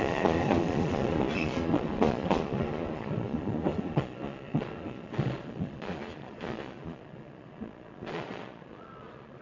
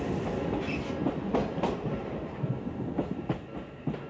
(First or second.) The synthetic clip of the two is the first